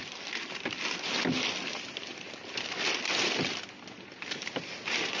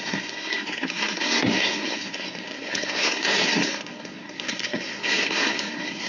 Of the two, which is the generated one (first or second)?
second